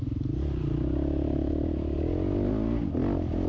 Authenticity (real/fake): real